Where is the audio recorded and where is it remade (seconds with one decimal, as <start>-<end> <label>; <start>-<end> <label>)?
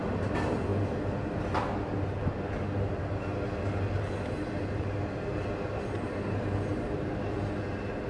0.0-8.1 recorded